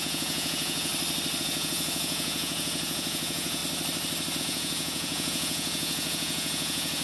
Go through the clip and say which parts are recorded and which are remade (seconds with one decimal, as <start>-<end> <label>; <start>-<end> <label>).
0.0-0.9 remade; 0.9-1.4 recorded; 1.4-3.6 remade; 3.6-4.4 recorded; 4.4-7.0 remade